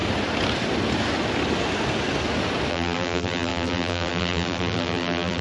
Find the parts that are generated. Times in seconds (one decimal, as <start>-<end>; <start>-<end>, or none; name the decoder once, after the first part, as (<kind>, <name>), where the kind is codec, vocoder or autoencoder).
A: 2.7-5.4 (vocoder, BigVGAN v2)

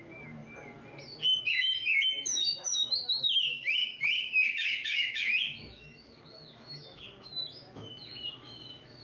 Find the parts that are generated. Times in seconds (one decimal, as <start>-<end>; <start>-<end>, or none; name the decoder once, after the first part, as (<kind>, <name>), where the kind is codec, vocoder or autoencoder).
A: 0.0-0.4 (autoencoder, DAC-VAE); 1.4-9.0